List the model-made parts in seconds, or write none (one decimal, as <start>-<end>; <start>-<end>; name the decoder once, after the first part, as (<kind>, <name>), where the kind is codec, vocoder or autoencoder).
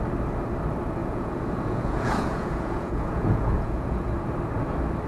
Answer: 1.0-4.1 (vocoder, Vocos)